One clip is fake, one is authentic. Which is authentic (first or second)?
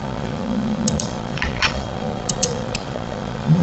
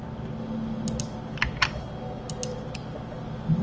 second